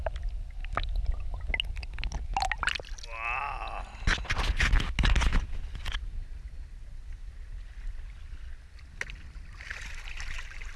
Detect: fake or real real